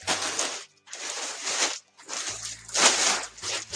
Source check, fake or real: real